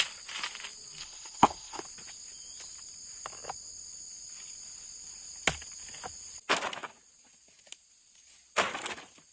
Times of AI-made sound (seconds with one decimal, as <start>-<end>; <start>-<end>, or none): 1.0-1.8